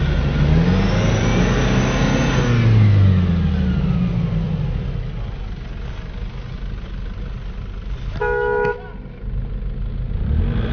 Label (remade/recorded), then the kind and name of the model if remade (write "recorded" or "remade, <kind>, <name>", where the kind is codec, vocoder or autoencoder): recorded